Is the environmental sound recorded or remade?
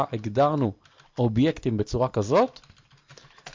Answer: recorded